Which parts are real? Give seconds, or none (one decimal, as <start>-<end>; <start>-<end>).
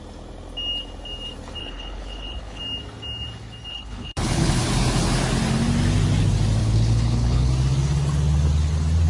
0.0-1.6; 2.6-3.7; 4.6-6.6; 7.5-9.1